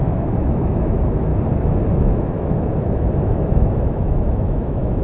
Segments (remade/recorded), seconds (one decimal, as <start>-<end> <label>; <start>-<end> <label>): 0.0-1.3 remade; 1.3-2.0 recorded; 2.0-5.0 remade